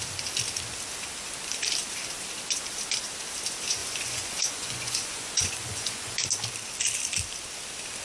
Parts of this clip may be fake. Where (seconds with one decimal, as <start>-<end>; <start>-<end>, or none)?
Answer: 3.8-6.3